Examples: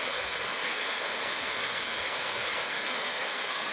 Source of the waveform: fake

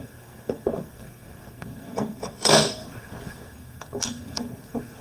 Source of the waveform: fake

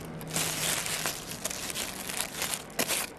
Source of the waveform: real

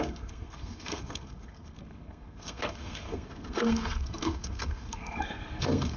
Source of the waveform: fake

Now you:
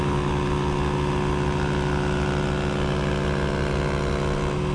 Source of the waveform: real